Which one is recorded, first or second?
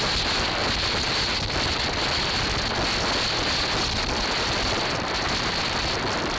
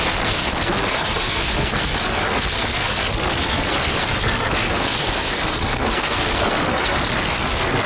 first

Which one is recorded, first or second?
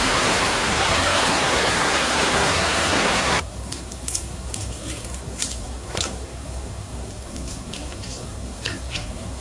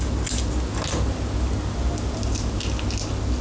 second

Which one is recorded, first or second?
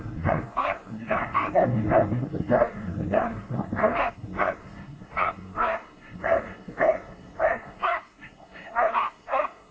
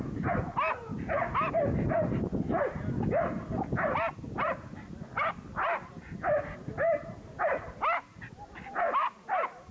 second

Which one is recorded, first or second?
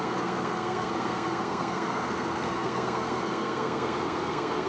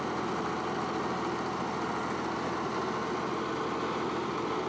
second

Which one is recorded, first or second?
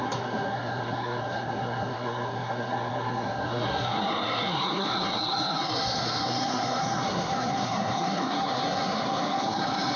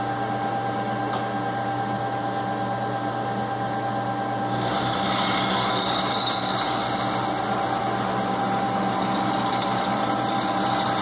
second